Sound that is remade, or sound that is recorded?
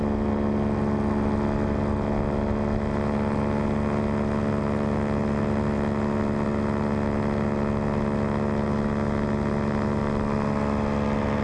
recorded